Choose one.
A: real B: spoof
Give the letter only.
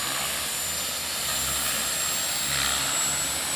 A